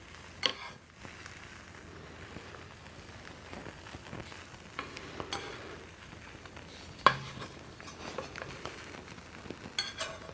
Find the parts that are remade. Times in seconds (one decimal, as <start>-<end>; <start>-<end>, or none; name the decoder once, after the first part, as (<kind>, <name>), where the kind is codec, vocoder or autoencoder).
3.6-8.7 (vocoder, BigVGAN v2)